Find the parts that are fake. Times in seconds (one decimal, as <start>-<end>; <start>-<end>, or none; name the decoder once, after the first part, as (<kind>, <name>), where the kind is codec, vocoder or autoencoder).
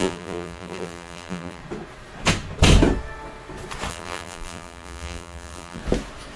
0.0-1.6 (vocoder, BigVGAN v2); 3.9-5.8